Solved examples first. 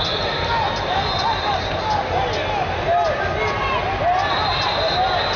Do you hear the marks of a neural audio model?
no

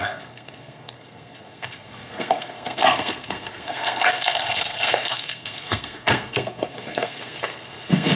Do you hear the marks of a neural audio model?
yes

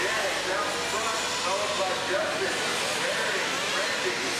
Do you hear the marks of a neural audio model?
no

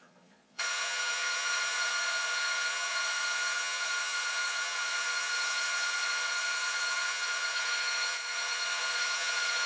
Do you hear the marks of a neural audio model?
yes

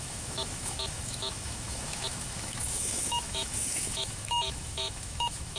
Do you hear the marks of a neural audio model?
yes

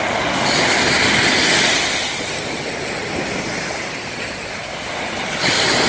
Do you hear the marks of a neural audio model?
no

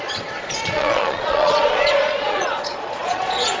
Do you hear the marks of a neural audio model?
yes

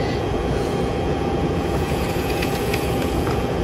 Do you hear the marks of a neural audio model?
yes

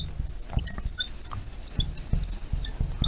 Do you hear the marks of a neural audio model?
no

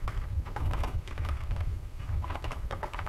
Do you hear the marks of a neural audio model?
yes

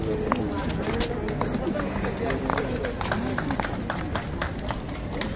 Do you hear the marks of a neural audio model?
no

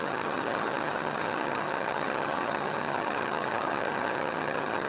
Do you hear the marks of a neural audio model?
yes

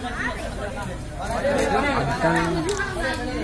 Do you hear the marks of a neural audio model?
no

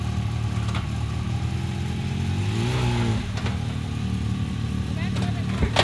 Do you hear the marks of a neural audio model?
no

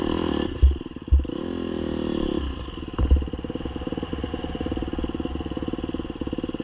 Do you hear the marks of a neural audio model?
no